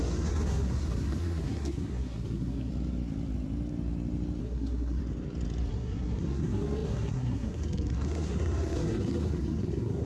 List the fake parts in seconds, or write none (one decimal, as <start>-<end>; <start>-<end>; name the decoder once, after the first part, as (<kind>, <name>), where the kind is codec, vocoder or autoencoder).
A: 0.0-2.7 (codec, SNAC); 4.4-5.0; 5.7-10.1